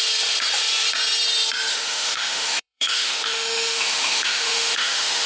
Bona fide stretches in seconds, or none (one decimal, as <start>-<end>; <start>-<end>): 0.0-1.7

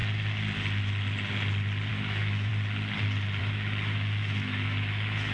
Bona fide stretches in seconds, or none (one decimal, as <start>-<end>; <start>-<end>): 0.0-1.9; 2.5-3.4